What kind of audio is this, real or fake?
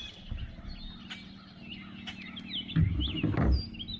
real